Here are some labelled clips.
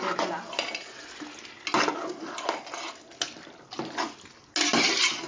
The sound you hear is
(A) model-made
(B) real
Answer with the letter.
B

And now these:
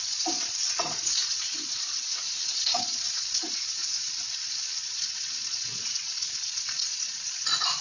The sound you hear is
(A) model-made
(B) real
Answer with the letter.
A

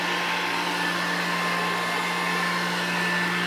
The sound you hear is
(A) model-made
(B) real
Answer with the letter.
B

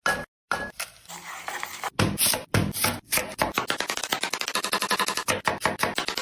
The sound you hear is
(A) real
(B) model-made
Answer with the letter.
A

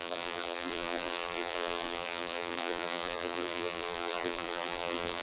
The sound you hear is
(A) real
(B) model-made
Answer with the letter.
B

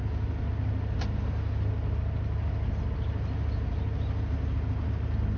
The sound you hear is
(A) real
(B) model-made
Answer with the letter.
A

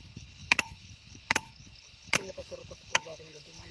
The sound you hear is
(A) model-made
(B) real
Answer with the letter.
A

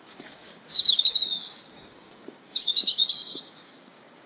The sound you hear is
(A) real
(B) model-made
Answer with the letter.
B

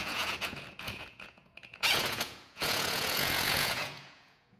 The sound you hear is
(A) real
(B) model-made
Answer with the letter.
B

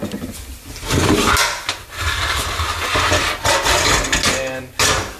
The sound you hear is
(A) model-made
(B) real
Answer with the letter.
B